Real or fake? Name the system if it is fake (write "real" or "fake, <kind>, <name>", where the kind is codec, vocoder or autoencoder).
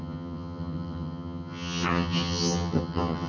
fake, vocoder, HiFi-GAN